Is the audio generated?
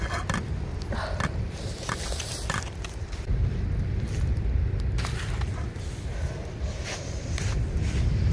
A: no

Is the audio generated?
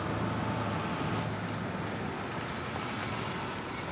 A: no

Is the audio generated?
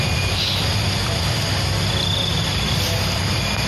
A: no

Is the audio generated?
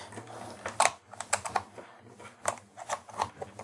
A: no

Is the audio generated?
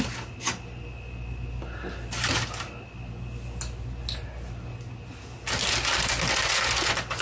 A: no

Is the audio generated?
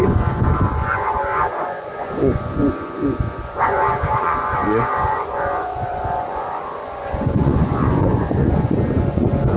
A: yes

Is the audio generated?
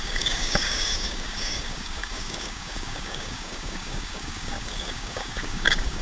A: yes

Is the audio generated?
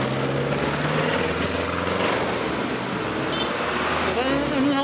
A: no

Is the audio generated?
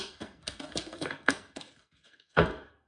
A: yes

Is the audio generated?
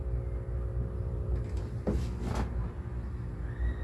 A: no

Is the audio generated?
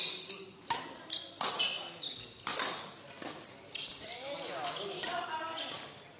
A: no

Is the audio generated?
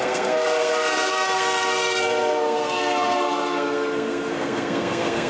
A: yes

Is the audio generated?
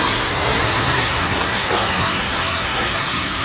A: yes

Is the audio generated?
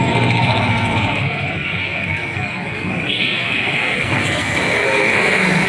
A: yes